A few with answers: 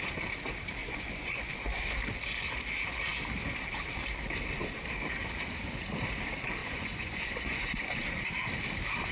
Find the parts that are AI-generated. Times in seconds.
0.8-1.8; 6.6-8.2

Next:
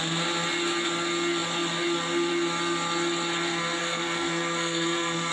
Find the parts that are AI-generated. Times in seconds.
3.8-5.3

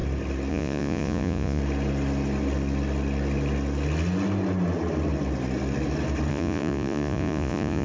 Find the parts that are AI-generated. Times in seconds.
0.5-1.6; 6.3-7.8

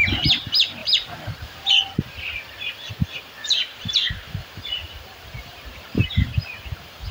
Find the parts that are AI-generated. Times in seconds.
0.8-1.7; 3.4-7.1